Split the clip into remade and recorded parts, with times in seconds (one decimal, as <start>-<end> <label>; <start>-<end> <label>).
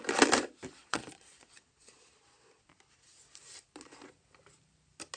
0.0-0.8 recorded; 0.8-2.7 remade; 2.7-5.2 recorded